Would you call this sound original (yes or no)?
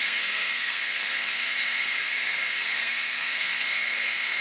no